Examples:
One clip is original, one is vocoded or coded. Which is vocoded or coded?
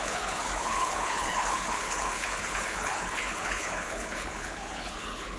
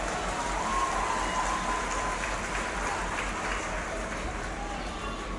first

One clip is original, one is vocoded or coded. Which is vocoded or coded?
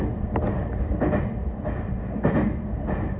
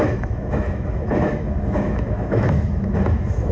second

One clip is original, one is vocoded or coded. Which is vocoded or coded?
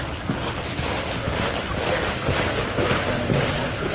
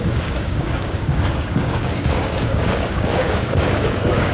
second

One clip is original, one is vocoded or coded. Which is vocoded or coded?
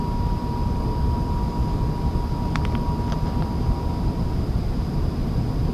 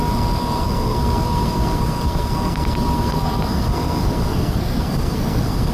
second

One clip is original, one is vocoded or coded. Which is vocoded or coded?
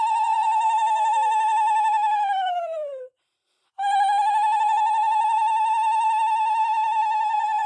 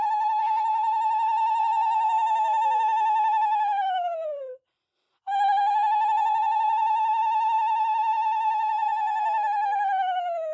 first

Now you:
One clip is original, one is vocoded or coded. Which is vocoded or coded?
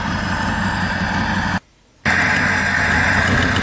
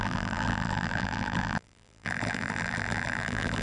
second